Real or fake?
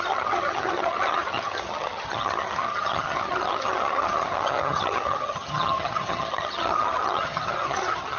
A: fake